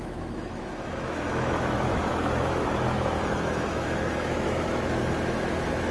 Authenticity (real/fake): fake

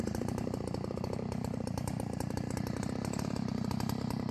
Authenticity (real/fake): fake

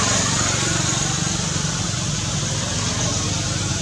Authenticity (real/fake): real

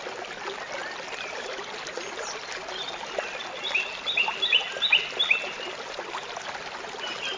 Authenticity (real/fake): real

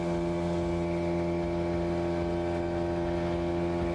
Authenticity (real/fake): real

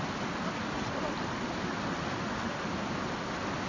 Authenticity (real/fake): real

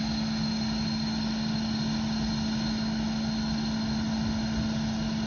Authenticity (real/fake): real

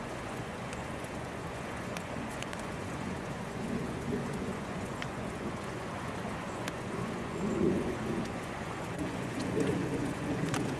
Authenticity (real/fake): fake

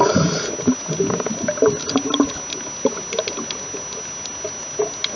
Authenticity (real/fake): real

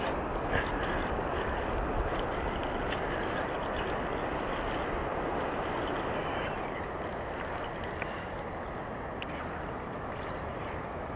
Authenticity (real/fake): real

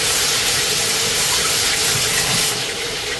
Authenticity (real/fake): fake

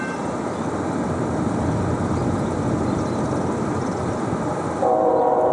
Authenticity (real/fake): fake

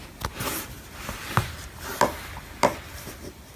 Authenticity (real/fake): real